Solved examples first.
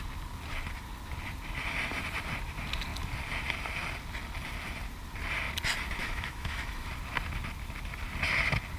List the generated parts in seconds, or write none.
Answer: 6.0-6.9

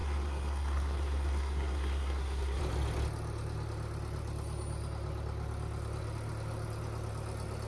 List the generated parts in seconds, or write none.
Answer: 0.0-2.6

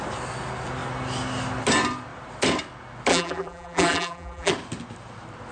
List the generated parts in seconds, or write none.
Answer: 3.1-4.5